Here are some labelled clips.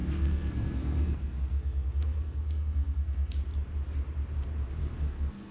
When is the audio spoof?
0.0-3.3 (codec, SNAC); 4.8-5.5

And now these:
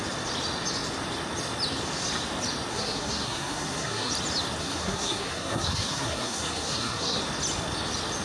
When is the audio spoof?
2.7-4.1 (codec, SNAC); 4.6-7.2

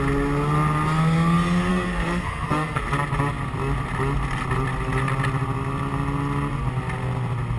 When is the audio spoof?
1.7-2.8 (codec, SNAC)

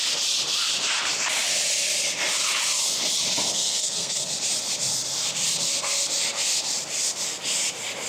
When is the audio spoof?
3.5-4.3 (codec, SNAC)